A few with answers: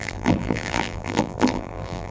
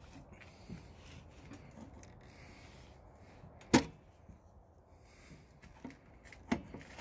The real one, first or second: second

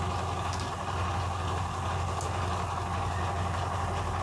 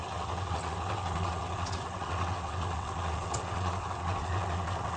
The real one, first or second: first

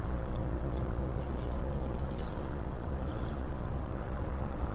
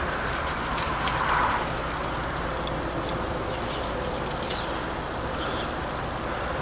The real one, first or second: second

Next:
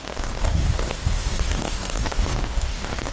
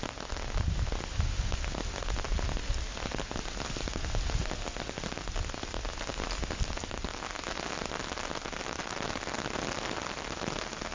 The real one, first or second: second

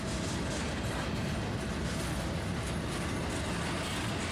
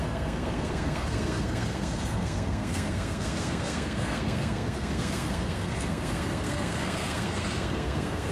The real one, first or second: first